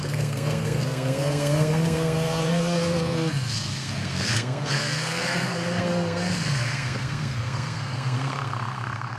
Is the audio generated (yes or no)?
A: yes